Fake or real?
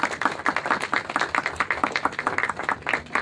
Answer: real